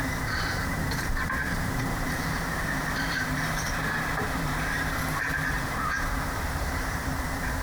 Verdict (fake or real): fake